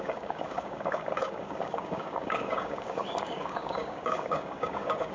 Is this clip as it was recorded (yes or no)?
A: no